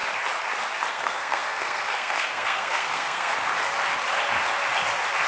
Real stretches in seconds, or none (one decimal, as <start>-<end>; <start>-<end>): 0.0-0.9; 3.3-5.3